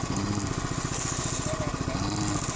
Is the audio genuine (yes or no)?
yes